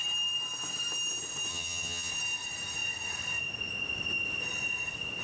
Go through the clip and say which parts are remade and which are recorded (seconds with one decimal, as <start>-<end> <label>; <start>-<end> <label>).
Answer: 0.0-1.5 recorded; 1.5-2.1 remade; 2.1-5.2 recorded